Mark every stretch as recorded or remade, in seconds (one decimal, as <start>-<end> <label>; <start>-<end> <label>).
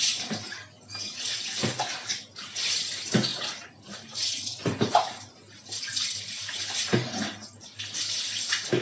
0.0-8.8 recorded